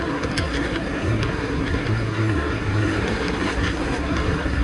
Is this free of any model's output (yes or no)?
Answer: no